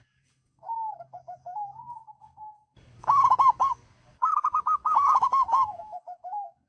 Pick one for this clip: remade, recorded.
remade